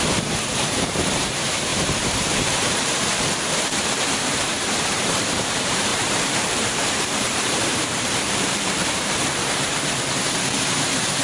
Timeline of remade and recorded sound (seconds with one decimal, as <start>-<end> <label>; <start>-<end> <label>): 0.0-9.7 remade; 9.7-11.2 recorded

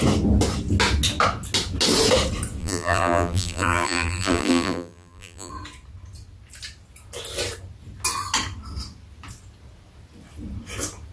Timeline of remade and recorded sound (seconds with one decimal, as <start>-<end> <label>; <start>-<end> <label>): 0.0-2.6 recorded; 2.6-5.5 remade; 5.5-11.1 recorded